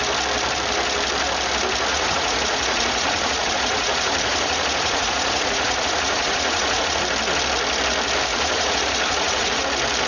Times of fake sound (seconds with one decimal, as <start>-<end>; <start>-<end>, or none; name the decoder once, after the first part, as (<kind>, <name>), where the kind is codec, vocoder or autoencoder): 1.9-7.0 (vocoder, Vocos); 8.3-9.6